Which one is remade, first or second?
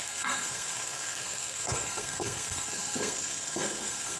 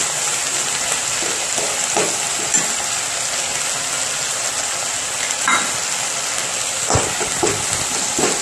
first